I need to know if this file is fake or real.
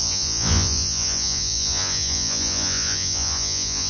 fake